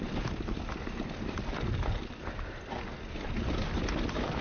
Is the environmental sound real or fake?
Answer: real